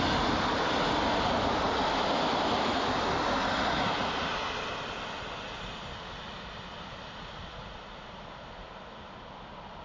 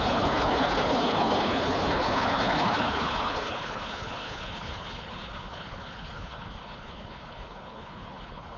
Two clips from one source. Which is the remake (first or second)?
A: second